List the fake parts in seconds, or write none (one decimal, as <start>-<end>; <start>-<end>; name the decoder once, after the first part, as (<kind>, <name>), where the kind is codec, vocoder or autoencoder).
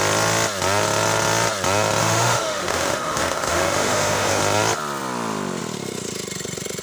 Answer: 2.0-4.4 (autoencoder, DAC-VAE)